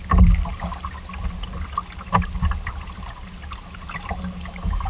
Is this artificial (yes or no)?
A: no